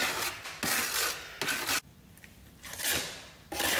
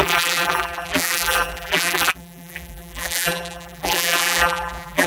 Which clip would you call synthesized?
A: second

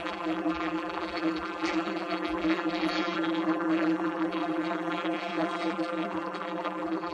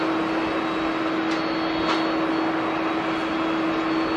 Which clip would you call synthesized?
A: first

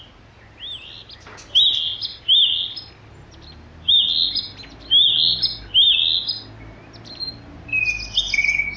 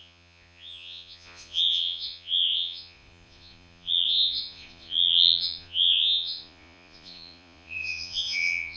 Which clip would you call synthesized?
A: second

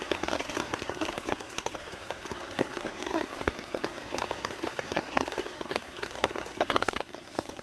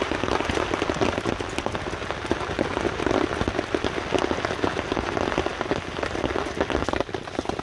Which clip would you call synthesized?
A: first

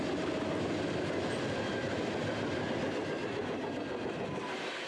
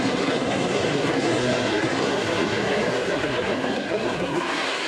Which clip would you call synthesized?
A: second